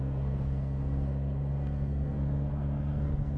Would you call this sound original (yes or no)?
no